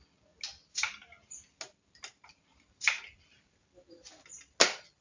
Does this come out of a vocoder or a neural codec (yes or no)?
no